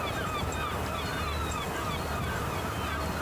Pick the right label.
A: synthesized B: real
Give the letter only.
B